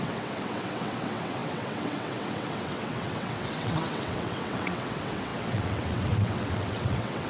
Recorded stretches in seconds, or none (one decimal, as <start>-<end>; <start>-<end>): none